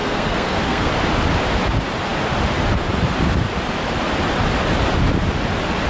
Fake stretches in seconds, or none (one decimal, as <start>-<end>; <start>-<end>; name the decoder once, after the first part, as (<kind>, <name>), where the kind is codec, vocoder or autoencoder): 0.0-0.9 (codec, SNAC)